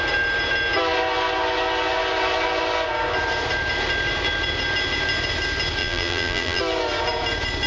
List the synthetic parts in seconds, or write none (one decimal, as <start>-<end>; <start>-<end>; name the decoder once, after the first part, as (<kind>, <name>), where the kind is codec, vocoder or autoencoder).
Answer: 5.8-6.6 (vocoder, BigVGAN v2)